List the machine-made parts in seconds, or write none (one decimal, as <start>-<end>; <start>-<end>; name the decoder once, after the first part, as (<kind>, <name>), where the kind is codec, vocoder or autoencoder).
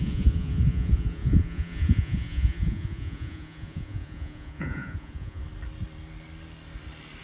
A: 0.0-5.4 (vocoder, Vocos)